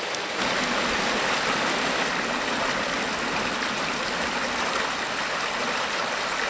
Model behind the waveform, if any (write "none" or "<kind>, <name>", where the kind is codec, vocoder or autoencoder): none